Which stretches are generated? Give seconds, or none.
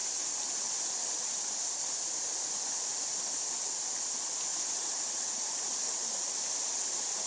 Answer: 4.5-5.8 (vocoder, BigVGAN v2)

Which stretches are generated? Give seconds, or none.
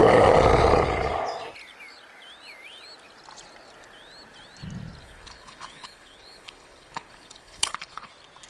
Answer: 5.0-8.1 (codec, HILCodec)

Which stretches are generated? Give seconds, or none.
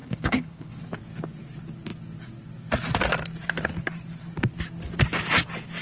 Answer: 0.0-0.8 (codec, HILCodec)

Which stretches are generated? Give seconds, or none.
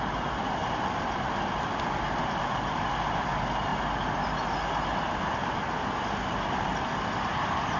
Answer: none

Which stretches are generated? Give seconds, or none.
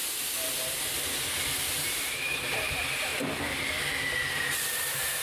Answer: 1.7-3.1 (vocoder, BigVGAN v2); 4.3-5.2